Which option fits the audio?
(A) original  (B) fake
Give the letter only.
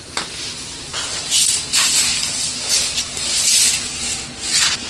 A